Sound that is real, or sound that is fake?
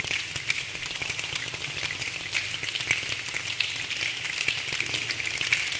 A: real